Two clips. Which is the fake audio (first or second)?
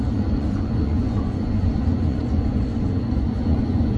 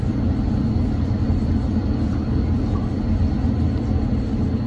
first